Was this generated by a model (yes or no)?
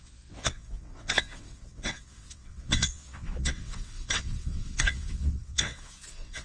yes